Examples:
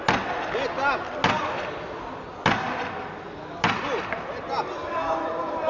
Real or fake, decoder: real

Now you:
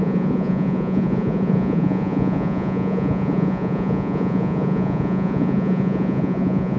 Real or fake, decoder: fake, vocoder, Vocos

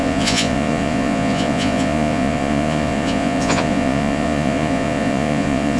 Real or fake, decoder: fake, vocoder, Vocos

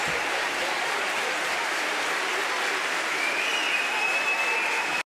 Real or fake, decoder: real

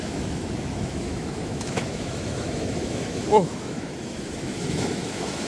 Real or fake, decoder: fake, autoencoder, DAC-VAE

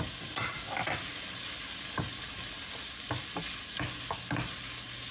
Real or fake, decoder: real